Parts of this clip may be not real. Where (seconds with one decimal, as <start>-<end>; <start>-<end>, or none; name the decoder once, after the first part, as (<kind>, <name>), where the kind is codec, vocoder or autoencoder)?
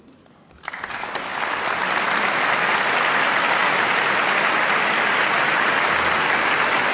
none